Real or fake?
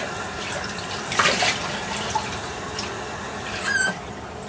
real